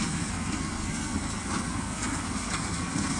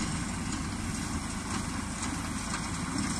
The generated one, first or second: first